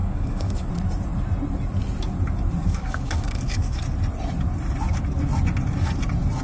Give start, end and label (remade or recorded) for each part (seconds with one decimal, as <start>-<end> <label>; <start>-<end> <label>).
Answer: 0.0-0.7 remade; 0.7-2.6 recorded; 2.6-3.8 remade; 3.8-6.4 recorded